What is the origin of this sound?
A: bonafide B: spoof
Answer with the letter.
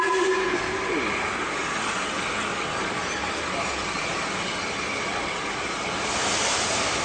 A